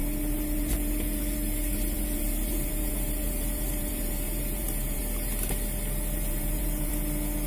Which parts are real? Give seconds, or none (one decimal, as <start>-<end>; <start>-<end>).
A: 5.0-6.3; 6.9-7.5